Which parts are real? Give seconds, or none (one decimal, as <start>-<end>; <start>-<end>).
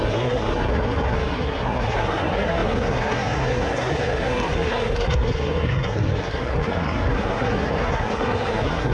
none